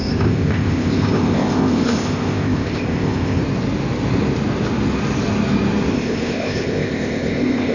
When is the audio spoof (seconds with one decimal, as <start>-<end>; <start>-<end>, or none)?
0.0-3.4; 5.9-7.7

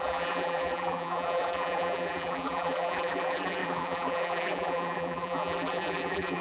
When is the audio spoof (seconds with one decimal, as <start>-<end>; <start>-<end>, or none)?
0.0-6.4

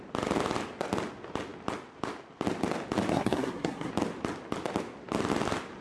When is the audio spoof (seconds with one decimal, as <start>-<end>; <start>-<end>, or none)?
3.1-3.9

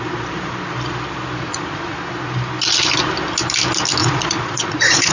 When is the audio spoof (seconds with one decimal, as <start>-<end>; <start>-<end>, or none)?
1.5-2.1; 4.0-5.1